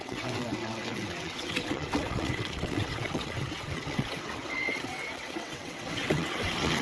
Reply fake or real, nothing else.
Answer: fake